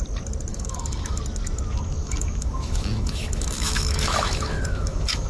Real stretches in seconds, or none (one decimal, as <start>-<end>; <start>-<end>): 0.0-0.5; 1.2-2.0